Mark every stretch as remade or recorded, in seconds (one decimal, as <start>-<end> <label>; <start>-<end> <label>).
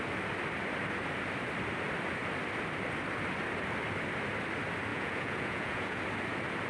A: 0.0-4.9 recorded; 4.9-6.0 remade; 6.0-6.7 recorded